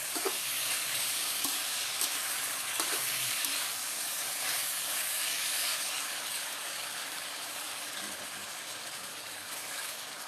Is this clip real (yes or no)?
no